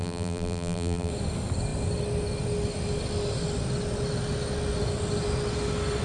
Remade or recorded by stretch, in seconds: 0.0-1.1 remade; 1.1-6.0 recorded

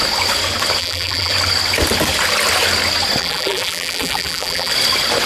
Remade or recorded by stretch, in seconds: 0.0-0.8 recorded; 0.8-1.3 remade; 1.3-3.2 recorded; 3.2-4.7 remade; 4.7-5.3 recorded

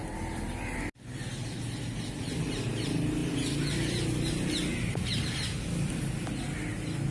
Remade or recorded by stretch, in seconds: 0.0-7.1 recorded

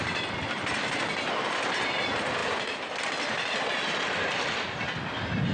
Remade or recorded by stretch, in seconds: 0.0-2.4 recorded; 2.4-3.1 remade; 3.1-5.5 recorded

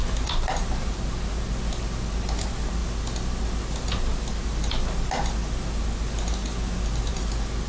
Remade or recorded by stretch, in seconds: 0.0-7.7 recorded

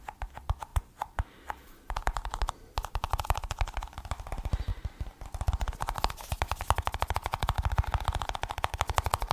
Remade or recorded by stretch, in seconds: 0.0-0.7 recorded; 0.7-2.5 remade; 2.5-4.7 recorded; 4.7-5.2 remade; 5.2-9.3 recorded

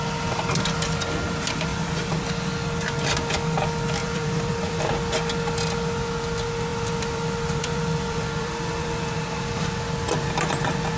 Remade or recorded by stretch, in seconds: 0.0-1.7 recorded; 1.7-2.2 remade; 2.2-4.0 recorded; 4.0-4.9 remade; 4.9-6.7 recorded; 6.7-9.7 remade; 9.7-11.0 recorded